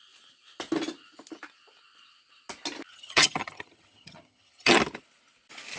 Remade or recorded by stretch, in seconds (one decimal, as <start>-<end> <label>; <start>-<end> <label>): 0.0-2.9 recorded; 2.9-4.8 remade; 4.8-5.8 recorded